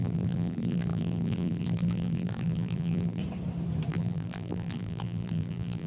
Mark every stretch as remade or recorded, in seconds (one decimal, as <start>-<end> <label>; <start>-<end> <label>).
0.0-3.2 remade; 3.2-3.9 recorded; 3.9-5.9 remade

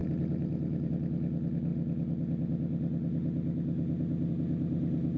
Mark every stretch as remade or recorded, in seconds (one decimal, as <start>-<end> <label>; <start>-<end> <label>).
0.0-0.9 remade; 0.9-5.2 recorded

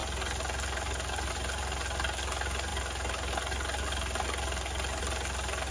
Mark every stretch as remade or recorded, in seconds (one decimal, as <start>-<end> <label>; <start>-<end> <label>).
0.0-5.7 recorded

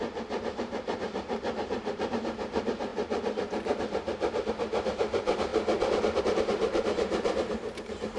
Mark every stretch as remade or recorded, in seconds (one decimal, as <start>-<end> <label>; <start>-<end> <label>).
0.0-2.9 remade; 2.9-4.5 recorded; 4.5-5.5 remade; 5.5-6.2 recorded; 6.2-8.2 remade